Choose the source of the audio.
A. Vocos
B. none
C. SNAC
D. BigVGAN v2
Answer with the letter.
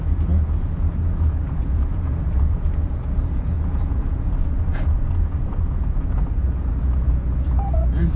A